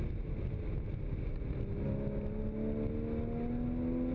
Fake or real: real